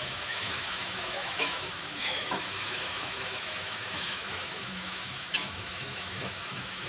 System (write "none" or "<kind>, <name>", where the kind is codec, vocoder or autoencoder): autoencoder, DAC-VAE